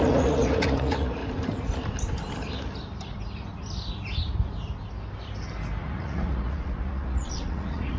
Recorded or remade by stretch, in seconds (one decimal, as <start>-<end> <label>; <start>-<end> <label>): 0.0-1.2 remade; 1.2-5.9 recorded; 5.9-8.0 remade